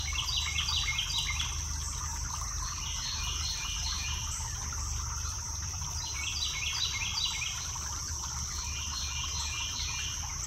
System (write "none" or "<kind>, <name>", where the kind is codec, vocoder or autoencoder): none